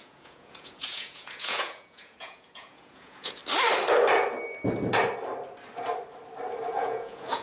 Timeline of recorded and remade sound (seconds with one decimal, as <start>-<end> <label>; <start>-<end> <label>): 0.0-3.4 remade; 3.4-6.7 recorded; 6.7-7.4 remade